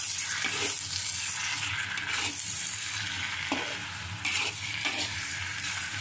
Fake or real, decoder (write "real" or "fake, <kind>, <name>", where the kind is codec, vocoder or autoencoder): real